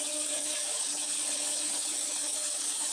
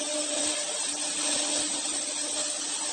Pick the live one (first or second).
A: second